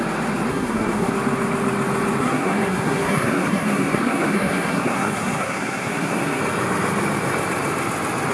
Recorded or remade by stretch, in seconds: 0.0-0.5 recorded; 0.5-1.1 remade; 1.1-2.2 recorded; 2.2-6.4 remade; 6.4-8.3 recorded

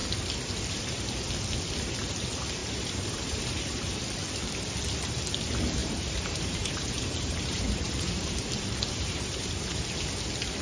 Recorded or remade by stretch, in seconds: 0.0-2.6 recorded; 2.6-4.0 remade; 4.0-5.8 recorded; 5.8-9.8 remade; 9.8-10.6 recorded

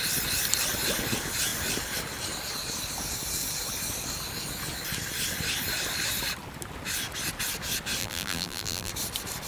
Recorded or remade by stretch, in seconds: 0.0-8.0 recorded; 8.0-8.9 remade; 8.9-9.5 recorded

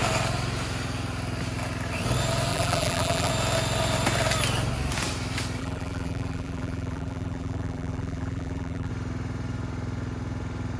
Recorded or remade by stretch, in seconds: 0.0-2.5 recorded; 2.5-3.3 remade; 3.3-5.6 recorded; 5.6-8.9 remade; 8.9-10.8 recorded

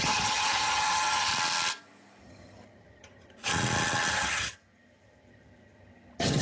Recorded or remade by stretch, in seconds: 0.0-1.3 remade; 1.3-2.2 recorded; 2.2-3.5 remade; 3.5-4.1 recorded; 4.1-6.4 remade

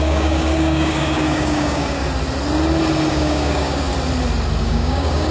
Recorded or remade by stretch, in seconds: 0.0-2.0 remade; 2.0-3.1 recorded; 3.1-3.9 remade; 3.9-4.6 recorded; 4.6-5.3 remade